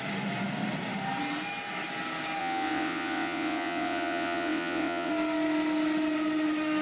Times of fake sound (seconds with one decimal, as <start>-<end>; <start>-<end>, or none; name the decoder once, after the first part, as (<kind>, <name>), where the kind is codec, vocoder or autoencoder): 2.4-5.1 (vocoder, WaveNeXt)